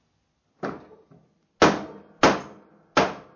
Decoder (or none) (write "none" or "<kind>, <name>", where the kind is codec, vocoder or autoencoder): none